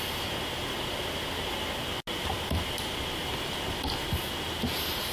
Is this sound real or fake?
real